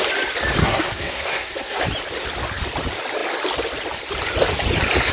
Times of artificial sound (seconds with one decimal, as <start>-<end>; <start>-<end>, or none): 0.6-1.8